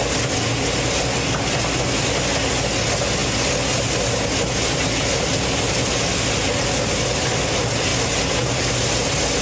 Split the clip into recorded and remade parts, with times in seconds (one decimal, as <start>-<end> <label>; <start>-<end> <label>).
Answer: 0.0-9.4 recorded